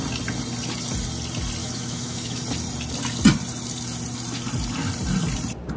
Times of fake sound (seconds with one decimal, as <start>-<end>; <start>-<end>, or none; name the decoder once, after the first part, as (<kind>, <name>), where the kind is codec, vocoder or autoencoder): 1.6-2.4 (autoencoder, DAC-VAE)